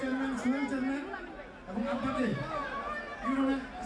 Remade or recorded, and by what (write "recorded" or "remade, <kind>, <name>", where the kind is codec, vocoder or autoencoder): recorded